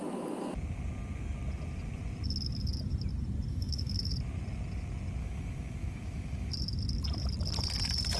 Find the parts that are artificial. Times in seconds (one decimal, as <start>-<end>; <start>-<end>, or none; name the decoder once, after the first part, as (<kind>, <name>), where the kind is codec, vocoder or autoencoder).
3.5-4.0 (autoencoder, DAC-VAE); 5.2-6.5